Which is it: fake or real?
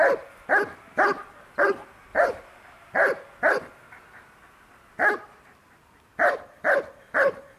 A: real